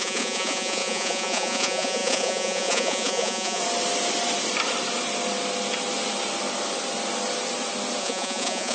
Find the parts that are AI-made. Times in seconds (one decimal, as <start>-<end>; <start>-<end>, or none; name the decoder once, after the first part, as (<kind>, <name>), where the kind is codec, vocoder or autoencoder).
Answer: 0.0-3.6 (vocoder, Vocos); 8.0-8.7